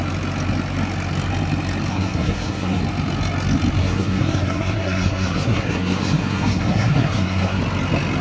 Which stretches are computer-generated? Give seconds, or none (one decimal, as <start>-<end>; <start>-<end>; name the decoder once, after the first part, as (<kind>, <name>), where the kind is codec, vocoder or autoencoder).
1.9-2.8 (codec, SNAC); 3.8-7.6